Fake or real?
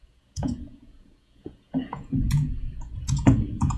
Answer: fake